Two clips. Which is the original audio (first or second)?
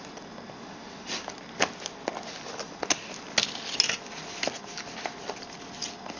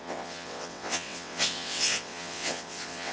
first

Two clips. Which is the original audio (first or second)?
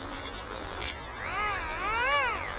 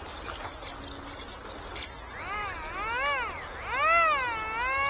second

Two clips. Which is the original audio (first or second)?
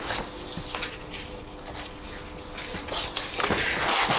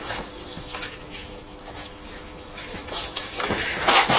first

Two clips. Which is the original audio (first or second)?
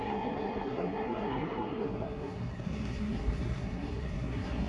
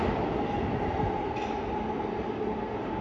second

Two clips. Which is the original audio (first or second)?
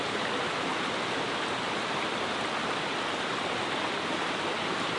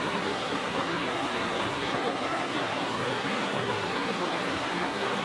first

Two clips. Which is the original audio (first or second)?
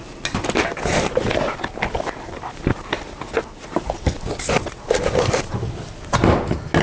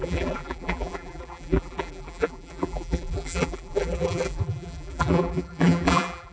first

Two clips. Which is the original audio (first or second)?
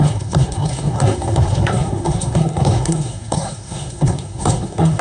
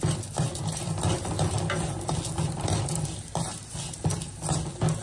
second